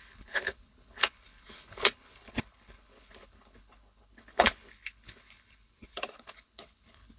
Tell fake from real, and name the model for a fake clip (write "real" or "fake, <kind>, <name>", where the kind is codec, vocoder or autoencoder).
fake, codec, HILCodec